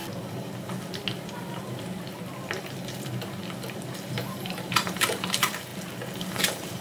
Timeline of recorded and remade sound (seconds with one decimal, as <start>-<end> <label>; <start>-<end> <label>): 0.0-4.1 recorded; 4.1-5.7 remade; 5.7-6.3 recorded; 6.3-6.8 remade